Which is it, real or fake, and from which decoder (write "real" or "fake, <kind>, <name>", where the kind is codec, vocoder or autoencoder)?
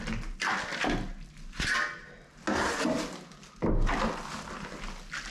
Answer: real